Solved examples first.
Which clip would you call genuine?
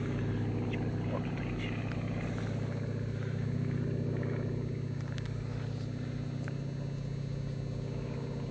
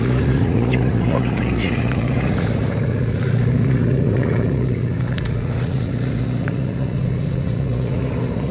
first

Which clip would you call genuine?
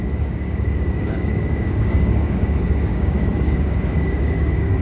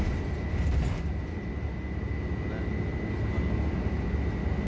second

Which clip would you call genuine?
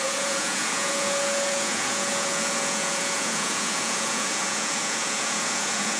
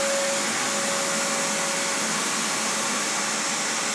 second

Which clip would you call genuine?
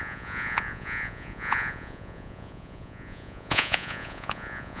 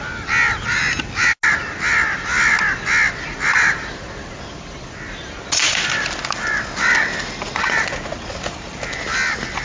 second